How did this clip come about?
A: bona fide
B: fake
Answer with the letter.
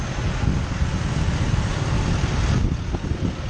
A